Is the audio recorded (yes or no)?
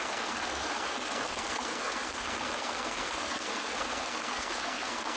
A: no